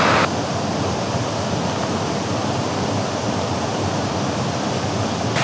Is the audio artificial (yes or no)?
no